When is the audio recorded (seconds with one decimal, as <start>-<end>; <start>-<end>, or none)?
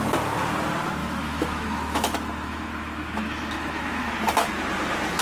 0.0-1.0; 4.1-5.2